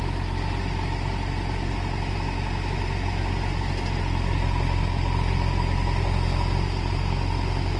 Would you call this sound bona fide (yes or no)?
yes